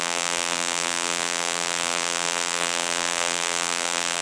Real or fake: fake